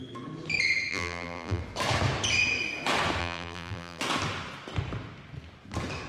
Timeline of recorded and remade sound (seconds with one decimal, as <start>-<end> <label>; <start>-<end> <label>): 0.0-0.9 recorded; 0.9-1.6 remade; 1.6-3.2 recorded; 3.2-4.0 remade; 4.0-6.1 recorded